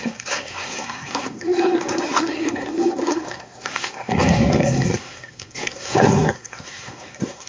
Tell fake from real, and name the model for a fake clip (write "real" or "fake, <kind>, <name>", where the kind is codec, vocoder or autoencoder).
fake, codec, SNAC